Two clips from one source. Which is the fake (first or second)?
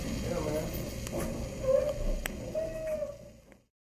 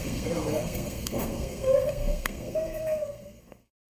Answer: second